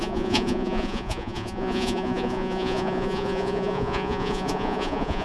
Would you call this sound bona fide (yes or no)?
no